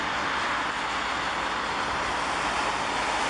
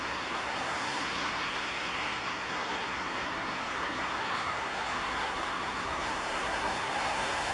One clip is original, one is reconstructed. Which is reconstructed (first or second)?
second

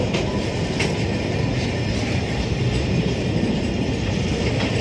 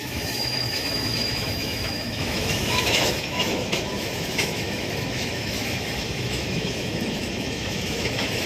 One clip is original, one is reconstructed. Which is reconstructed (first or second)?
second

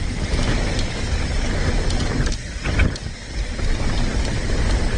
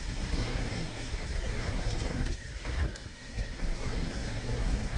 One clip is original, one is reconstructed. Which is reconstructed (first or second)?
second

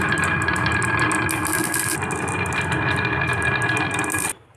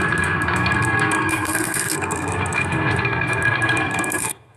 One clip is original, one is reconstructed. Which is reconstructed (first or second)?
second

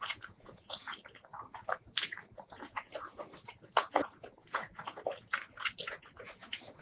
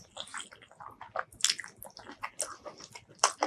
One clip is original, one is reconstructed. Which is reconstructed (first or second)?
first